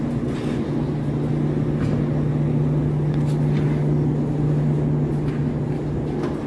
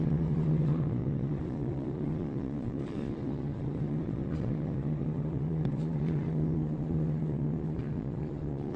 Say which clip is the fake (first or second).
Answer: second